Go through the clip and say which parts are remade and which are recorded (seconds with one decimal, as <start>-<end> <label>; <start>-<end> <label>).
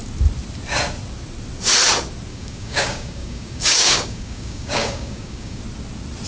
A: 0.0-2.3 recorded; 2.3-5.6 remade; 5.6-6.3 recorded